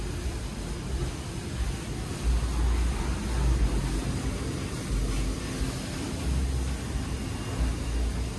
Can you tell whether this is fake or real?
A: real